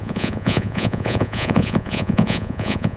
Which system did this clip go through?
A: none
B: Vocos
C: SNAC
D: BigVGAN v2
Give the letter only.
B